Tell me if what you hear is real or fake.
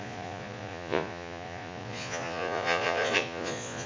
fake